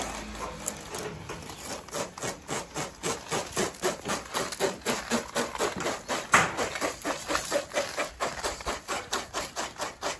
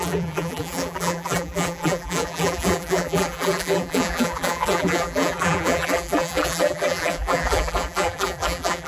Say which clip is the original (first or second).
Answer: first